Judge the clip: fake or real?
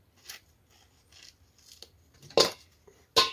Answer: real